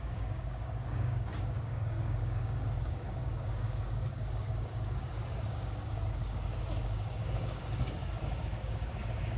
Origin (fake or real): fake